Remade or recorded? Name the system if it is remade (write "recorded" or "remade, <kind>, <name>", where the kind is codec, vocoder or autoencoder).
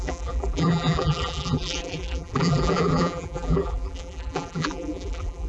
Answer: remade, vocoder, BigVGAN v2